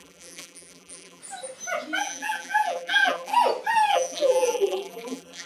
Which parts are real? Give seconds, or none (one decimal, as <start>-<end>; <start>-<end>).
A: 1.2-2.0; 3.3-3.9